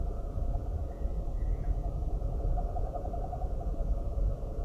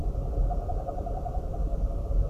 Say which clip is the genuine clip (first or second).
second